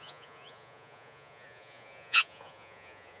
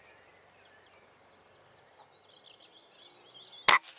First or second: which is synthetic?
first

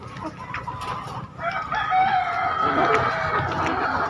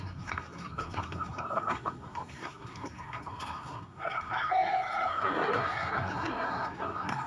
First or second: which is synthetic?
second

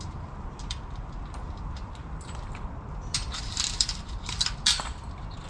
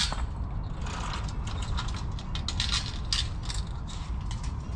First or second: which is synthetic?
first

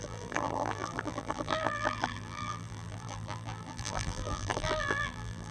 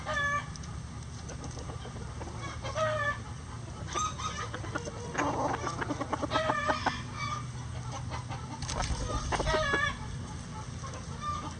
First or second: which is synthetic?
first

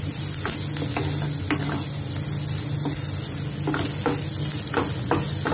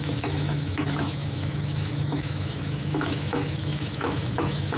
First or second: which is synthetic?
second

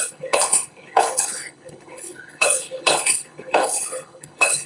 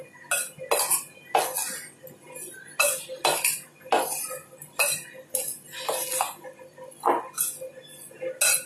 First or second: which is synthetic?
first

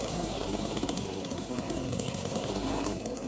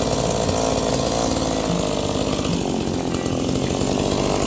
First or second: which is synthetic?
first